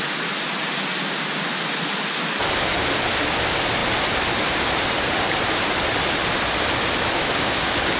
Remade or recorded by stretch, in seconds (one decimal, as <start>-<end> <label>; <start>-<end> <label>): 0.0-8.0 recorded